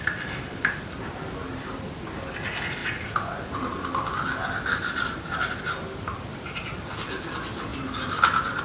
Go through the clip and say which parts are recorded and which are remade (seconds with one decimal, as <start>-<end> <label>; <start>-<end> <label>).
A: 0.0-8.6 recorded

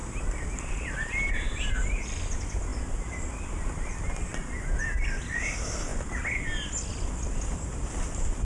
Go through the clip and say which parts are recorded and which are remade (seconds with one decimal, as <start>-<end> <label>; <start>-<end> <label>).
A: 0.0-8.4 recorded